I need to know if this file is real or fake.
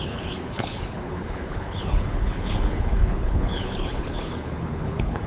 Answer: fake